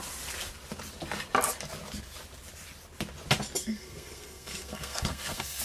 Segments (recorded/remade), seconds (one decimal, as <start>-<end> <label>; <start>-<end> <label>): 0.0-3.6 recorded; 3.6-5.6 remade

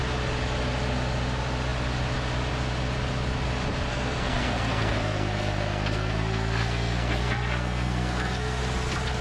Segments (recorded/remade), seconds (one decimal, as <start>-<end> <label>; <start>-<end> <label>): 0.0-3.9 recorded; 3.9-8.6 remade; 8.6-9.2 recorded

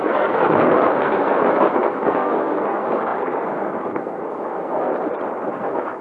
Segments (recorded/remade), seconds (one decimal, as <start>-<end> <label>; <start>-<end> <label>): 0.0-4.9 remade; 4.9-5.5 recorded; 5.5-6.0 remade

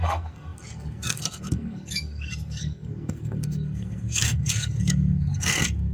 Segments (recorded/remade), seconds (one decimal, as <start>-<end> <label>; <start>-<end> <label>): 0.0-5.9 remade

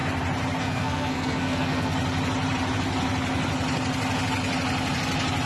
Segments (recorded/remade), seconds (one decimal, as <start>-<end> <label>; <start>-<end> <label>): 0.0-0.6 recorded; 0.6-1.9 remade; 1.9-5.5 recorded

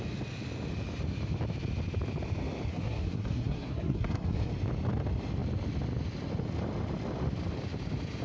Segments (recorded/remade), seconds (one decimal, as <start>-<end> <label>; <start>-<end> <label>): 0.0-2.7 recorded; 2.7-4.5 remade; 4.5-8.2 recorded

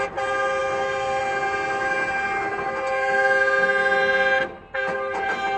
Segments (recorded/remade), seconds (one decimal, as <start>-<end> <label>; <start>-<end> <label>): 0.0-5.6 recorded

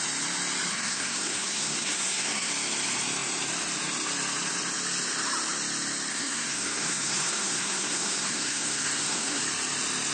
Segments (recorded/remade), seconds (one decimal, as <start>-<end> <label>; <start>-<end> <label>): 0.0-0.7 recorded; 0.7-2.5 remade; 2.5-6.1 recorded; 6.1-9.4 remade; 9.4-10.1 recorded